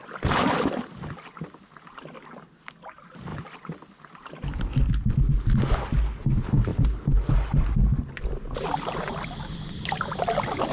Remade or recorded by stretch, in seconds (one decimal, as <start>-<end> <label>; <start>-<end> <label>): 0.0-2.9 remade; 2.9-3.3 recorded; 3.3-5.1 remade; 5.1-10.7 recorded